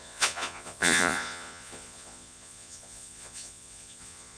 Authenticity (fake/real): fake